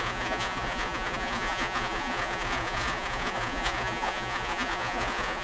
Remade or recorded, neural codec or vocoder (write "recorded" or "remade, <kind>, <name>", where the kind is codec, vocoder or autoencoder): remade, vocoder, Vocos